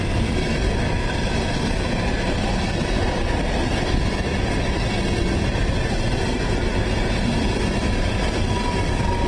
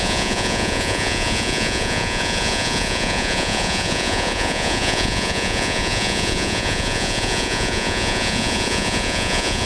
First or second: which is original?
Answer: first